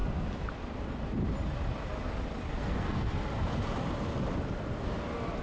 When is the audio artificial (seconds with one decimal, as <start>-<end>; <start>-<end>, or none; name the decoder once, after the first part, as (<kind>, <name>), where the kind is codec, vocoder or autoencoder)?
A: 2.5-3.2 (codec, SNAC)